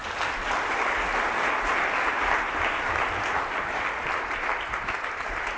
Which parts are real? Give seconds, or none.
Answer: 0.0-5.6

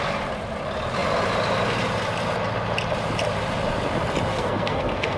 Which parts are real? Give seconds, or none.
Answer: 0.0-4.3

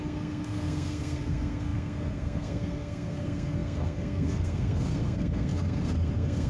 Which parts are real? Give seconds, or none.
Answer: none

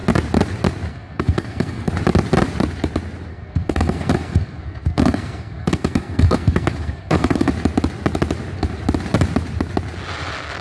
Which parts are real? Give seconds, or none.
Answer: 0.0-0.9; 1.9-3.3; 7.5-10.6

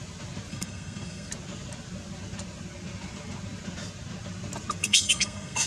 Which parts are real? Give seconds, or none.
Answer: 0.0-0.5; 1.3-4.8

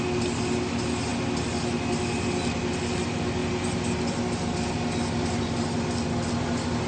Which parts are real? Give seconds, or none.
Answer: 0.0-6.9

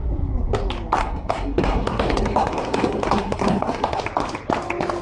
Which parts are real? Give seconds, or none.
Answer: 0.0-1.0; 4.0-5.0